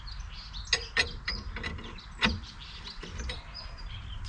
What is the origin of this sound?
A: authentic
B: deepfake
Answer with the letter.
A